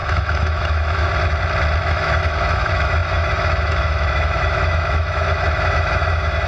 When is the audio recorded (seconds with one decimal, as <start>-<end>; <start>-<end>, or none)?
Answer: 1.1-1.8